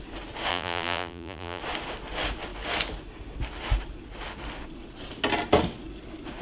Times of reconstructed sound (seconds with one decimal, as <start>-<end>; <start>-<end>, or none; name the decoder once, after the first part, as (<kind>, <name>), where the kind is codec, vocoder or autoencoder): 0.5-1.6 (vocoder, BigVGAN v2)